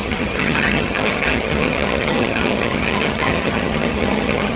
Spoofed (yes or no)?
yes